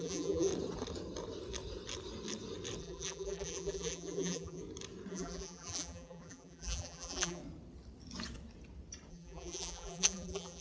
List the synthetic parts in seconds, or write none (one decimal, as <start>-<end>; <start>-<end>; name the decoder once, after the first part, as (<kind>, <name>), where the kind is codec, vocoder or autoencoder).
0.0-0.5 (vocoder, BigVGAN v2); 2.8-4.6; 5.1-7.4; 9.1-10.6